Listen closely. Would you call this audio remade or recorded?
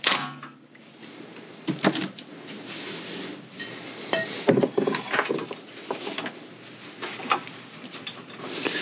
recorded